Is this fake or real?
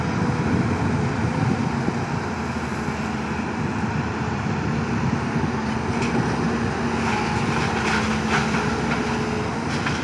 real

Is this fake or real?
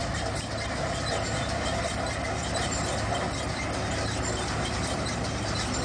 real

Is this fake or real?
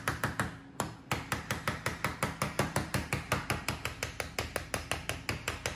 real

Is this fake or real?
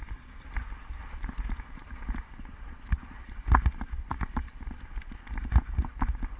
real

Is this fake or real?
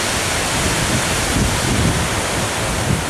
real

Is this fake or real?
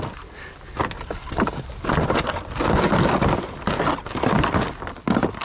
real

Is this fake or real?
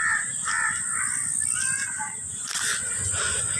real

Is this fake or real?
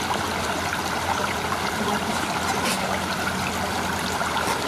real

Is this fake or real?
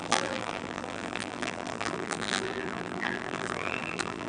fake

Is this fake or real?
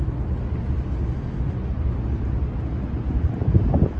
real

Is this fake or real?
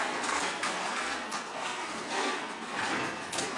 fake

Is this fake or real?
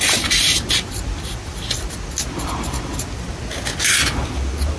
real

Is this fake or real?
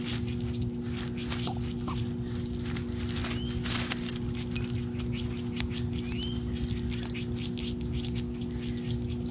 real